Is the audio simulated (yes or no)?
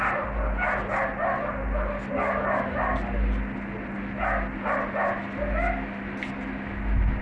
no